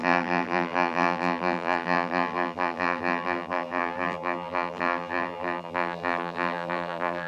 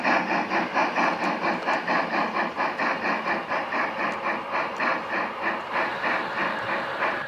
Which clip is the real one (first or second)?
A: second